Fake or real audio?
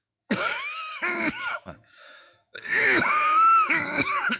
fake